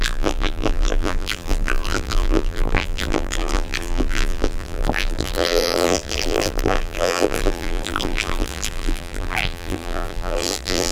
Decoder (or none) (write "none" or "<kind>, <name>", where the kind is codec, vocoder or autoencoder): vocoder, BigVGAN v2